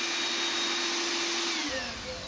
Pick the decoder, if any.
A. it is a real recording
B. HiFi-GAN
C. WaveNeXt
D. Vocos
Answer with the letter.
A